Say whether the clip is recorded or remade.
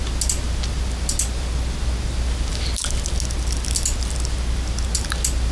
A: recorded